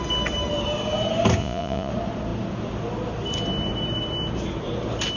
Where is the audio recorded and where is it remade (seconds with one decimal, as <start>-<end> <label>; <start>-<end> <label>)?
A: 0.0-1.4 recorded; 1.4-1.9 remade; 1.9-5.2 recorded